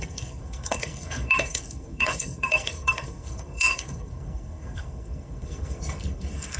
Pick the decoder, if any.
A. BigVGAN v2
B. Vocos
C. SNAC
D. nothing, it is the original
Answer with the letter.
C